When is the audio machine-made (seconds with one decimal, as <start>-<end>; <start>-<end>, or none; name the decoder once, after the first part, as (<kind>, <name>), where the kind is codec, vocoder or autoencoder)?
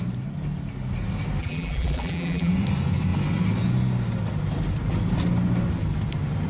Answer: 1.4-2.5 (vocoder, BigVGAN v2)